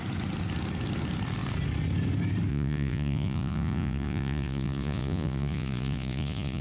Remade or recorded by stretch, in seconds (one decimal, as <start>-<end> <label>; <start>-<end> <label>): 0.0-2.5 recorded; 2.5-6.6 remade